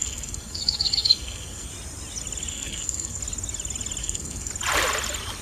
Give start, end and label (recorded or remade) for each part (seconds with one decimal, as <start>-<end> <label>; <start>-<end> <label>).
0.0-1.7 remade; 1.7-2.5 recorded; 2.5-3.2 remade; 3.2-4.0 recorded; 4.0-4.5 remade; 4.5-5.4 recorded

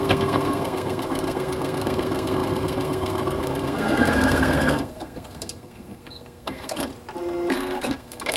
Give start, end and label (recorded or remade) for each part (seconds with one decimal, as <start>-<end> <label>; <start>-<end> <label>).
0.0-6.9 remade; 6.9-7.5 recorded; 7.5-8.4 remade

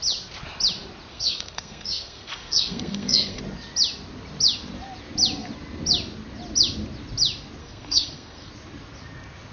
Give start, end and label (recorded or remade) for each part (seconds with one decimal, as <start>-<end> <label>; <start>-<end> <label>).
0.0-1.1 recorded; 1.1-3.4 remade; 3.4-7.6 recorded; 7.6-8.5 remade; 8.5-9.5 recorded

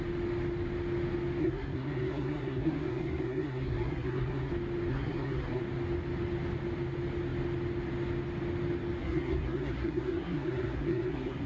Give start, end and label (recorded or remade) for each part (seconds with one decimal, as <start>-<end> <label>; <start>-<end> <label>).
0.0-1.4 recorded; 1.4-4.5 remade; 4.5-4.9 recorded; 4.9-5.6 remade; 5.6-9.0 recorded; 9.0-11.5 remade

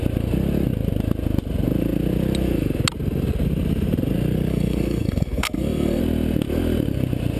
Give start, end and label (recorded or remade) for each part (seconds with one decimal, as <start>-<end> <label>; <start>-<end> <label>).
0.0-4.5 recorded; 4.5-6.0 remade; 6.0-7.4 recorded

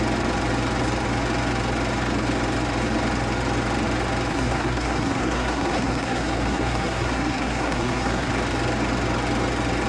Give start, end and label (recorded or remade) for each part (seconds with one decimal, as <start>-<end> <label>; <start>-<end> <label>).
0.0-4.3 recorded; 4.3-8.3 remade; 8.3-9.9 recorded

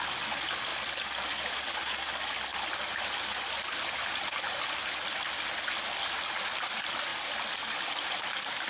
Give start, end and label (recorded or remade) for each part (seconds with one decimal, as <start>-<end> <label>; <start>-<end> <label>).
0.0-8.7 recorded

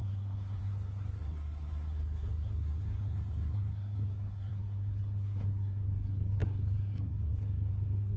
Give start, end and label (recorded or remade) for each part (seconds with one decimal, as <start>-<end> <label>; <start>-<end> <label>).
0.0-8.2 remade